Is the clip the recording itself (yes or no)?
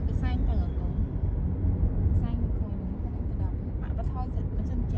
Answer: yes